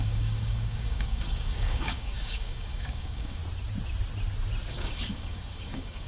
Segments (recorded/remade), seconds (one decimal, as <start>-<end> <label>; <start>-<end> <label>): 0.0-3.4 remade; 3.4-4.7 recorded; 4.7-6.1 remade